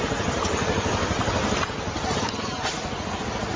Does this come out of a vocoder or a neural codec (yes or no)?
no